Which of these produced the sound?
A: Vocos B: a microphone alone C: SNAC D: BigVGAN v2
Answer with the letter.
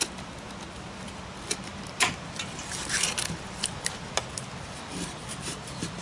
D